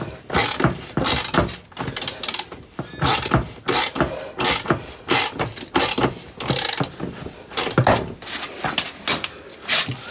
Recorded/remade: recorded